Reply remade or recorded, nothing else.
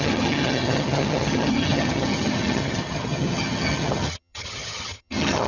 remade